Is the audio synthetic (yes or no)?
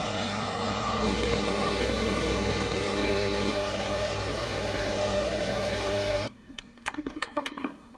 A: yes